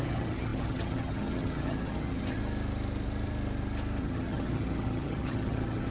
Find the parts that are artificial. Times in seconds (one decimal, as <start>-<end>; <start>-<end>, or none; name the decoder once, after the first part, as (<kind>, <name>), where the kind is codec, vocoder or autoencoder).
0.0-2.4 (vocoder, HiFi-GAN); 4.0-5.9